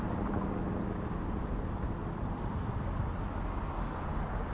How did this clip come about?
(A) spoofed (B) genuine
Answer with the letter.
B